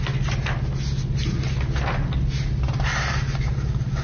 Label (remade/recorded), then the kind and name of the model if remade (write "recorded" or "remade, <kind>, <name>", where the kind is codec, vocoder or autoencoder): recorded